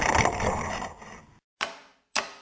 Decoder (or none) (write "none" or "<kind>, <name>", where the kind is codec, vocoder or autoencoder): none